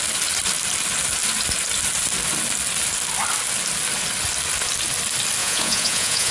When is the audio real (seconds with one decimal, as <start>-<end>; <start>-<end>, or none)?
0.0-5.4